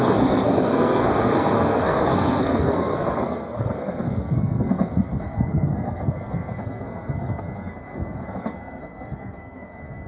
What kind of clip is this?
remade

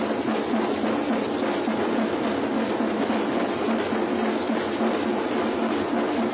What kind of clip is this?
recorded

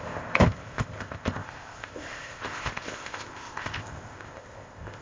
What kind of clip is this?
remade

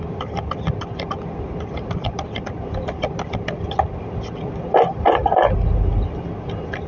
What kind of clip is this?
recorded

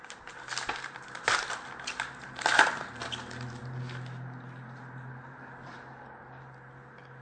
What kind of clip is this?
recorded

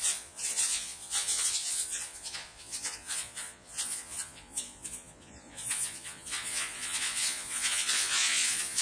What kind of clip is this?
remade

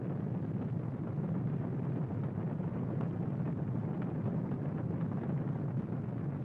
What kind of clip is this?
recorded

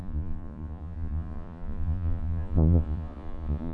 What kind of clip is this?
remade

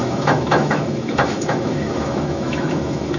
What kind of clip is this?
remade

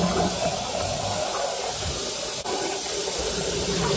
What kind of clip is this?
recorded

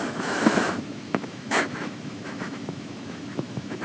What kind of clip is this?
remade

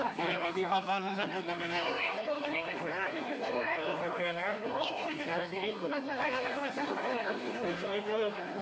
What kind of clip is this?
remade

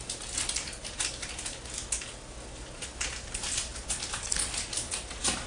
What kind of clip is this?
recorded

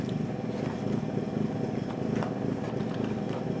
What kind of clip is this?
recorded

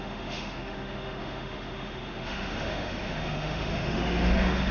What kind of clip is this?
remade